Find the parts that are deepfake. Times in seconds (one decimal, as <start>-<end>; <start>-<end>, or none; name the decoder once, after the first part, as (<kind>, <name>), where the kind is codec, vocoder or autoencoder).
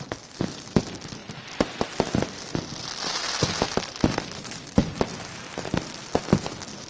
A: none